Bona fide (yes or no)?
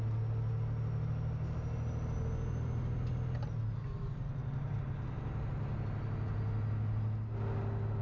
yes